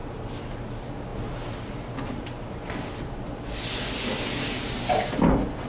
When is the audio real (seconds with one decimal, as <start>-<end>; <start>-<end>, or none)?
0.0-5.7